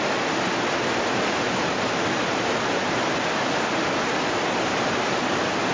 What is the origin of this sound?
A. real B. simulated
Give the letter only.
A